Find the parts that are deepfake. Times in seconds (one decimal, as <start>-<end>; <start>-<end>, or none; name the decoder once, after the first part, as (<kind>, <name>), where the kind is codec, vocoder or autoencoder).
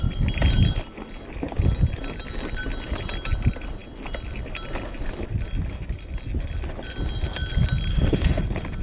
7.9-8.4 (autoencoder, DAC-VAE)